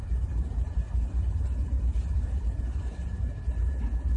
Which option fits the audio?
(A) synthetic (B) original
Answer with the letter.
B